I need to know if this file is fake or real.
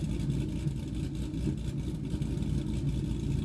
real